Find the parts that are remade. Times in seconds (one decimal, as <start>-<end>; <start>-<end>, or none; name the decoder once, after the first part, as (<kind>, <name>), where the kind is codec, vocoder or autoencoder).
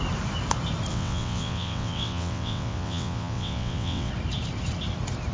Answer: 0.9-4.1 (vocoder, WaveNeXt)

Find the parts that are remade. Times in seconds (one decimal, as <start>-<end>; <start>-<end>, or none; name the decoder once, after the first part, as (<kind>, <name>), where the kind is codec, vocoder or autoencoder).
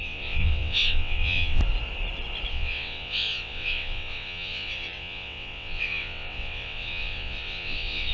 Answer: 0.0-1.6 (vocoder, WaveNeXt); 2.5-8.1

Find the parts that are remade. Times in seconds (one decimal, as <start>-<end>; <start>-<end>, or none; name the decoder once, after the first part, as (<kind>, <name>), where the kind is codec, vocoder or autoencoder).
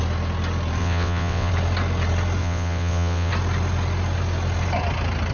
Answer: 0.8-1.5 (vocoder, WaveNeXt); 2.4-3.3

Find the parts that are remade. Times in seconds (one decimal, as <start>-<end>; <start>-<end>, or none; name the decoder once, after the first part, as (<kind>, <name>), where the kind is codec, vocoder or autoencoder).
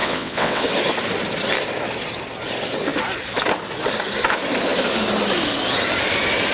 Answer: 0.0-0.6 (vocoder, WaveNeXt)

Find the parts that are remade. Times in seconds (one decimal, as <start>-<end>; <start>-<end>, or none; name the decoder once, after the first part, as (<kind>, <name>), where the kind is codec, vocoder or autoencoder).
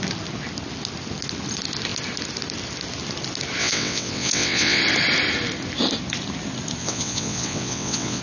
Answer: 3.6-4.8 (vocoder, WaveNeXt); 6.8-8.2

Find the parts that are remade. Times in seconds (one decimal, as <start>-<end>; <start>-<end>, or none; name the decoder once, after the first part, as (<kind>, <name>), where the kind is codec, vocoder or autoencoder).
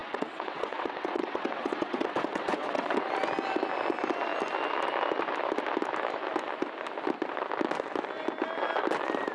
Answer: 0.0-3.0 (vocoder, WaveNeXt)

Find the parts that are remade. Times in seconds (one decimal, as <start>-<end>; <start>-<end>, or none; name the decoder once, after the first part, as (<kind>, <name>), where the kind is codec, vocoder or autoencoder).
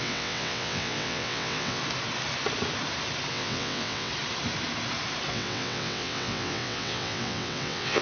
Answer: 0.0-1.8 (vocoder, WaveNeXt); 3.3-4.1; 5.3-8.0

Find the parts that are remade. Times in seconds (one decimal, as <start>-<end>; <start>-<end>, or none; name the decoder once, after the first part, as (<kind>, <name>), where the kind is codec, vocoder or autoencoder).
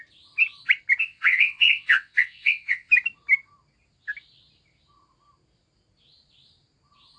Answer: 1.0-2.9 (vocoder, WaveNeXt)